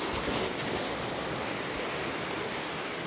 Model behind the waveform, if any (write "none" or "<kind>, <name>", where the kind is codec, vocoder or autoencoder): none